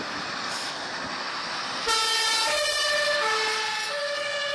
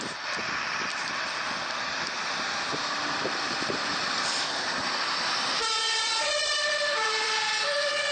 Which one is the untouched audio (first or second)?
first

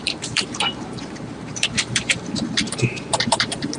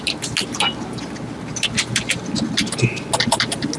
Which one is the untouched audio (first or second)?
second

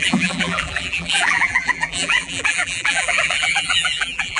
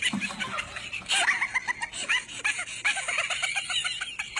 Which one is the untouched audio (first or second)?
second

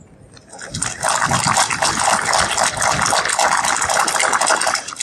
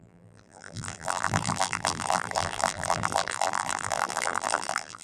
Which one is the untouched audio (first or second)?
first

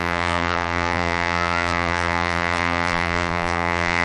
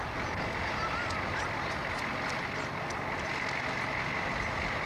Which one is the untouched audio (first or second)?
second